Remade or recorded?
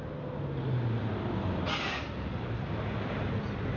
recorded